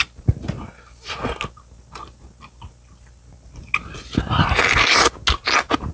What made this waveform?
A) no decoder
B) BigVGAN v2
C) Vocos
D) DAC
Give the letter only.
A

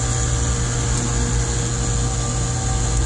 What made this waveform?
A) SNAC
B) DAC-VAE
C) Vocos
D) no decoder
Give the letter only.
D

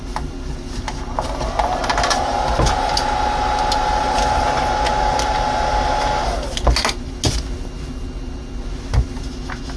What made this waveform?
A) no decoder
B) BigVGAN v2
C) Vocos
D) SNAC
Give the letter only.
A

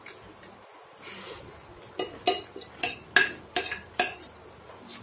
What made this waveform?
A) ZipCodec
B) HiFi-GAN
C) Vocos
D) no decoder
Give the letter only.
D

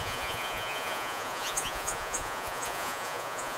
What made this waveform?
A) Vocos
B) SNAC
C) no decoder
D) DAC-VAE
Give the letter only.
A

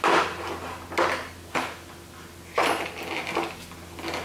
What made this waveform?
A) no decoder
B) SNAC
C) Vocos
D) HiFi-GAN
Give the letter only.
A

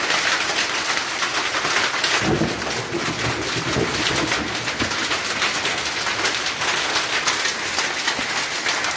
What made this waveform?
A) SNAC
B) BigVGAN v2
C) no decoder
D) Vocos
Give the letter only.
C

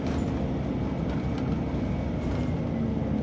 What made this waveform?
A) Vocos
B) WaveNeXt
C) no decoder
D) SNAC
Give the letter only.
C